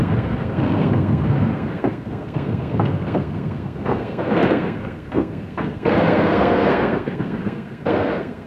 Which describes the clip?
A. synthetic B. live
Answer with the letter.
A